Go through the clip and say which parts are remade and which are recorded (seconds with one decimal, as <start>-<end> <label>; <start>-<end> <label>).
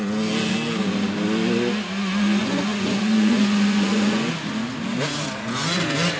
0.0-2.4 recorded; 2.4-4.3 remade; 4.3-6.2 recorded